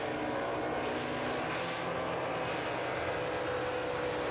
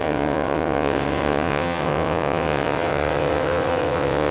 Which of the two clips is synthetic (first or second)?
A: second